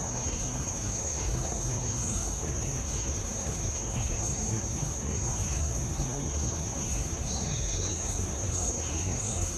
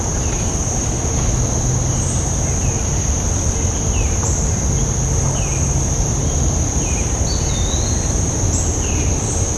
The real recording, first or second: second